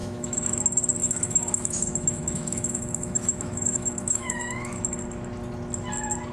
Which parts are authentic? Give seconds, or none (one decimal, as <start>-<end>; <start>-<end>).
0.6-1.0; 4.8-6.3